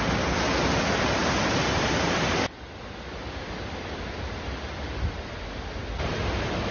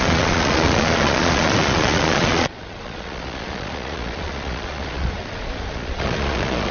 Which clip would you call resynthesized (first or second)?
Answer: second